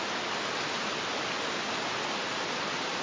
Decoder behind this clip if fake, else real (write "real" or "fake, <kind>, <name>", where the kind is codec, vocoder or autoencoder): real